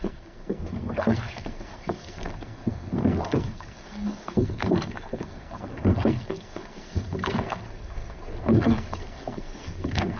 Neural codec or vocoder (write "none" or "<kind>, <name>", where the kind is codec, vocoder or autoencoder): codec, SNAC